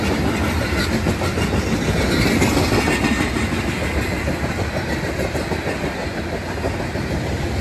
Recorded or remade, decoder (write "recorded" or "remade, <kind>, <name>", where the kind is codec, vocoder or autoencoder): recorded